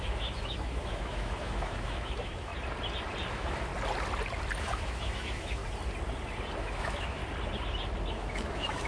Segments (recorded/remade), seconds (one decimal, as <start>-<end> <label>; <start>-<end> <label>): 0.0-2.5 remade; 2.5-3.3 recorded; 3.3-3.7 remade; 3.7-4.6 recorded; 4.6-5.6 remade; 5.6-6.6 recorded; 6.6-7.2 remade; 7.2-8.1 recorded; 8.1-8.9 remade